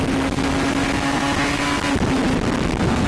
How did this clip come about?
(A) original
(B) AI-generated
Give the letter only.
A